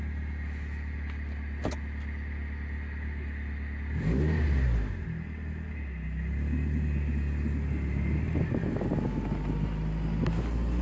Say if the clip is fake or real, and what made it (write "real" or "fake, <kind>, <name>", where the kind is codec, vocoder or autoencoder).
real